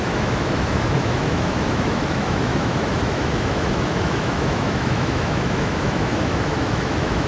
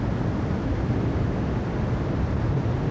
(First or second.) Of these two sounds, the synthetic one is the first